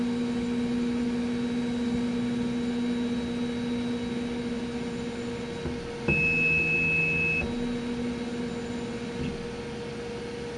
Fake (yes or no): no